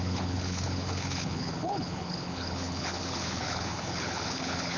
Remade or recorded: remade